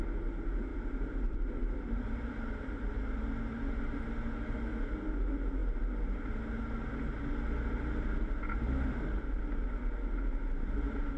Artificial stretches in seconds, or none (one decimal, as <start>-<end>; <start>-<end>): 0.7-2.3